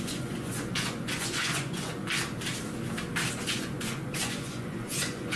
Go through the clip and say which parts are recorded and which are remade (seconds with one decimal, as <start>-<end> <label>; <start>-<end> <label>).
0.0-2.0 remade; 2.0-3.3 recorded; 3.3-5.4 remade